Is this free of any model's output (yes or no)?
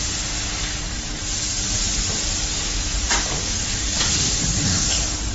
yes